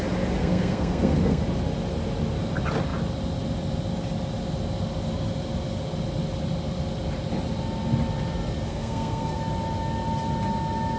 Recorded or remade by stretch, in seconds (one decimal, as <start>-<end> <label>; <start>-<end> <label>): 0.0-0.4 recorded; 0.4-1.4 remade; 1.4-8.7 recorded; 8.7-9.4 remade; 9.4-11.0 recorded